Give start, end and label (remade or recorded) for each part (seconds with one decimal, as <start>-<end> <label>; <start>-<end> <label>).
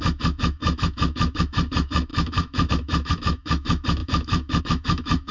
0.0-5.3 remade